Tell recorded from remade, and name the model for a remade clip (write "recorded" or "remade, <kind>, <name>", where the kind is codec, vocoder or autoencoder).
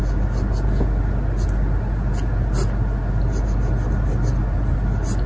recorded